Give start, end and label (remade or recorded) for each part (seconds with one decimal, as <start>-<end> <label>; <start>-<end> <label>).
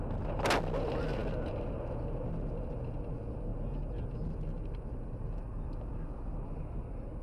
0.0-7.2 recorded